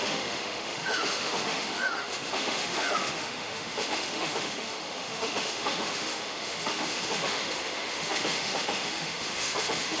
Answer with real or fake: fake